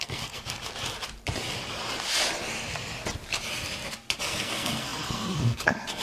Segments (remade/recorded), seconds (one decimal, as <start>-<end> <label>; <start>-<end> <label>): 0.0-0.6 remade; 0.6-4.2 recorded; 4.2-6.0 remade